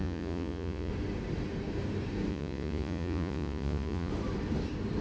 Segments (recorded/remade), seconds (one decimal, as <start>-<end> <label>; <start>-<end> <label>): 0.0-0.9 remade; 0.9-2.3 recorded; 2.3-4.1 remade; 4.1-5.0 recorded

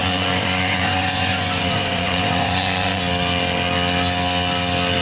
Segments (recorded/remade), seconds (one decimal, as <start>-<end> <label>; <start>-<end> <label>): 0.0-3.0 remade; 3.0-5.0 recorded